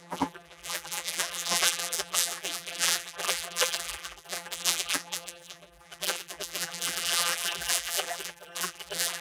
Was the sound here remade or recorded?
remade